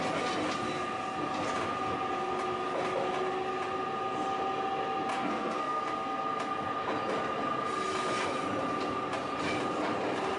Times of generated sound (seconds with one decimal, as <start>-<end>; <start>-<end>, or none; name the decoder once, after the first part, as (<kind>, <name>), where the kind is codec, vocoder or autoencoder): 5.1-5.8 (codec, SNAC)